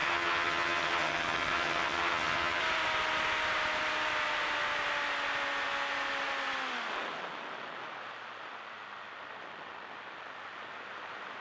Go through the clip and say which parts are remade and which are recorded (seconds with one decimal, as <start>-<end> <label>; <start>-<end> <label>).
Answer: 0.0-2.6 remade; 2.6-11.4 recorded